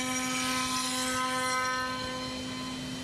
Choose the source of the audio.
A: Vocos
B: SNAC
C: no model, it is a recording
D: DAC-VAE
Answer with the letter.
C